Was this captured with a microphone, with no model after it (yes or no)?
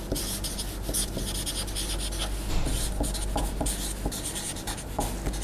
yes